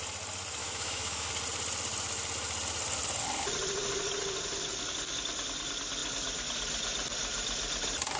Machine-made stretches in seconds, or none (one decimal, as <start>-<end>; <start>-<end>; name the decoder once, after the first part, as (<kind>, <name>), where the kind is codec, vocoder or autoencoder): 0.6-1.3 (autoencoder, DAC-VAE)